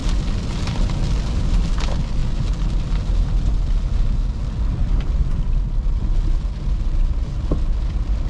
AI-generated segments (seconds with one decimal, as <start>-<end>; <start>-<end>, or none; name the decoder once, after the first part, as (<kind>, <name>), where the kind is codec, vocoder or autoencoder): 1.1-2.2 (vocoder, BigVGAN v2); 6.1-8.3